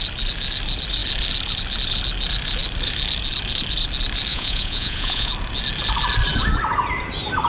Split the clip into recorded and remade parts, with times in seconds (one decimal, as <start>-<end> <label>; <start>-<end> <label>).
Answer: 0.0-4.3 recorded; 4.3-5.3 remade; 5.3-7.5 recorded